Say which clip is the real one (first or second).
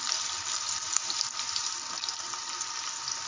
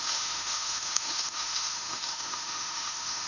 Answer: first